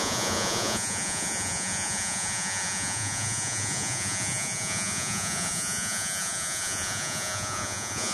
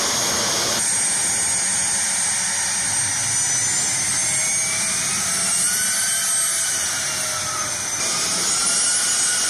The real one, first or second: second